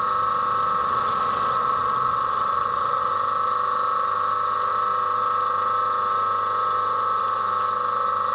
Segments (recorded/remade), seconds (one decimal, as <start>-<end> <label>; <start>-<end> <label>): 0.0-0.8 recorded; 0.8-3.1 remade; 3.1-8.3 recorded